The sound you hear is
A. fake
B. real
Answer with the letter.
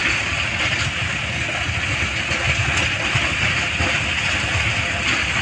B